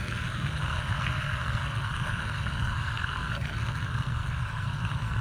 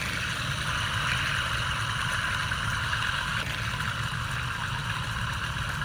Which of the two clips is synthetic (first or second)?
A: first